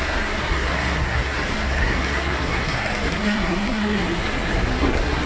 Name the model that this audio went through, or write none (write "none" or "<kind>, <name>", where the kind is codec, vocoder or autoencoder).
codec, SNAC